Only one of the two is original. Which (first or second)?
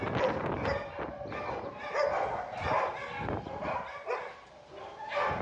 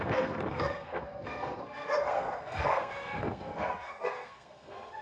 first